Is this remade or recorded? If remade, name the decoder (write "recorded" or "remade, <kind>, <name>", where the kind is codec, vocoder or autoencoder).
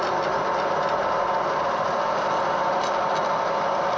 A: recorded